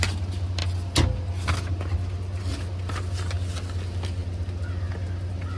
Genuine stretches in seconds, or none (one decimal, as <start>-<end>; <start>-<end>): 0.0-5.6